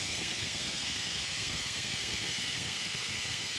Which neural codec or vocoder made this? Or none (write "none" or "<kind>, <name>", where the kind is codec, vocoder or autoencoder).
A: codec, SNAC